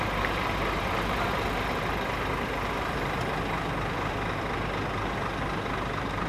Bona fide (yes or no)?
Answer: yes